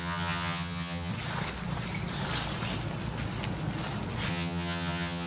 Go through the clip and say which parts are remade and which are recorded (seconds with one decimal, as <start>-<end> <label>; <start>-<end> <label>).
0.0-1.1 remade; 1.1-4.3 recorded; 4.3-5.3 remade